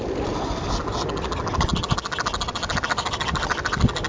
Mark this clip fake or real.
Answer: real